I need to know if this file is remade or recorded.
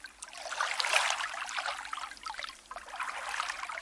recorded